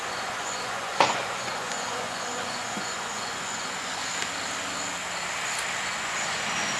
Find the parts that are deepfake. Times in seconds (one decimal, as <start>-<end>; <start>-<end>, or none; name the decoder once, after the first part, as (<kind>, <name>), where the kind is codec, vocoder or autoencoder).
0.0-4.0 (vocoder, Vocos); 5.8-6.8